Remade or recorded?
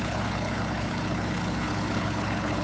remade